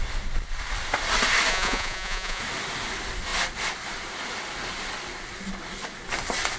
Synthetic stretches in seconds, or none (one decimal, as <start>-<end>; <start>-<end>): 1.5-2.4